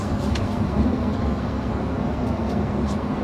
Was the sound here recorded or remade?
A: remade